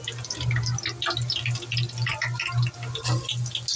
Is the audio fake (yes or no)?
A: no